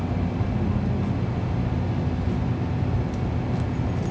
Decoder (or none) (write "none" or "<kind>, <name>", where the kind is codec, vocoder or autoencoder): none